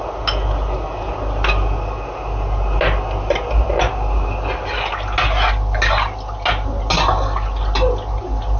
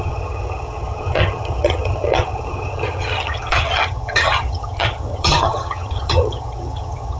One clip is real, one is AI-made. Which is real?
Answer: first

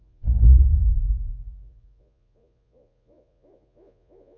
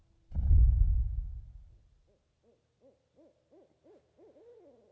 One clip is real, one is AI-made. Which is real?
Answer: second